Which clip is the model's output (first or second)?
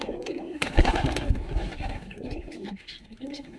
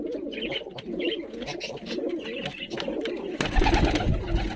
first